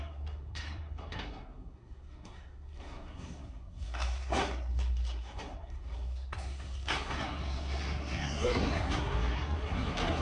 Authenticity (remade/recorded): remade